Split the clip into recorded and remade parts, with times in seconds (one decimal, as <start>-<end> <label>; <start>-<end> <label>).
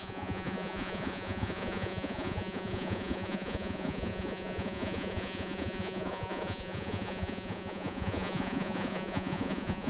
0.0-9.9 remade